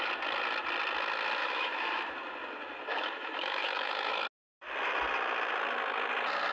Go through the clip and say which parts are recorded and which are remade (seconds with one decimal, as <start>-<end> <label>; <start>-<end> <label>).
0.0-1.4 recorded; 1.4-2.1 remade; 2.1-2.9 recorded; 2.9-4.1 remade; 4.1-6.5 recorded